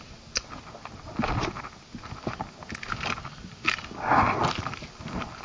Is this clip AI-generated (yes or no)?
no